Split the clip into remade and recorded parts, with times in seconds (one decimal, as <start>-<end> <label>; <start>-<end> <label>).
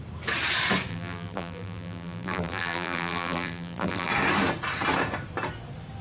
0.0-0.9 recorded; 0.9-4.1 remade; 4.1-6.0 recorded